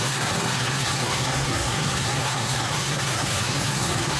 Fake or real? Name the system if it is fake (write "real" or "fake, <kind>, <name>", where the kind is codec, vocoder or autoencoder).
fake, codec, SNAC